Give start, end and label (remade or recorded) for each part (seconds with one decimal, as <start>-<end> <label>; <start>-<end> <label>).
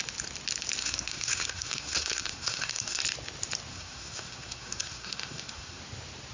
0.0-0.8 recorded; 0.8-3.0 remade; 3.0-3.7 recorded; 3.7-5.8 remade; 5.8-6.3 recorded